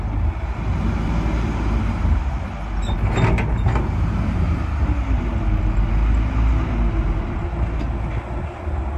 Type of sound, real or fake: real